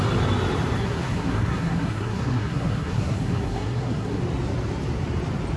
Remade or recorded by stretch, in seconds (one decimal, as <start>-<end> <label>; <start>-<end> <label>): 0.0-0.8 recorded; 0.8-4.2 remade; 4.2-5.6 recorded

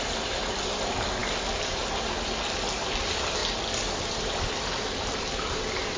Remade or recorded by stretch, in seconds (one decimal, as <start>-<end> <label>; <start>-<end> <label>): 0.0-6.0 recorded

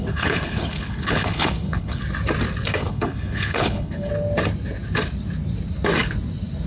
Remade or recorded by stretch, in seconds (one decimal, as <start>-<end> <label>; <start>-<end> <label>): 0.0-2.0 remade; 2.0-2.8 recorded; 2.8-4.1 remade; 4.1-6.7 recorded

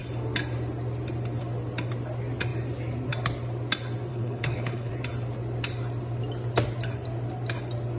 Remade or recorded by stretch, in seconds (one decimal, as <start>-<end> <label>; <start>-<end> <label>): 0.0-4.1 recorded; 4.1-4.9 remade; 4.9-8.0 recorded

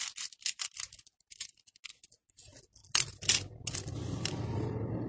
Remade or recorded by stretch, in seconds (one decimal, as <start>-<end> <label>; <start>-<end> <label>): 0.0-5.1 recorded

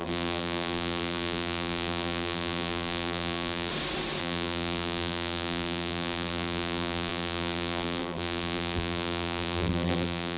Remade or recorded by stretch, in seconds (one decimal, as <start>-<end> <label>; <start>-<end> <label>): 0.0-3.7 remade; 3.7-4.2 recorded; 4.2-10.4 remade

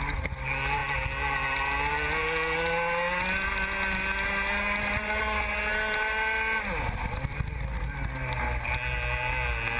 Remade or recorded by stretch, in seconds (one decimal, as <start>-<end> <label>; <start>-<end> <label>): 0.0-9.8 recorded